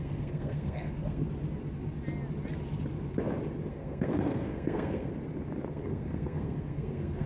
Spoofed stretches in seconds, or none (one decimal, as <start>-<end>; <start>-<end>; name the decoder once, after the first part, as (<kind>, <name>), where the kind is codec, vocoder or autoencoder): 0.0-1.2 (codec, SNAC); 3.7-5.1; 5.7-7.3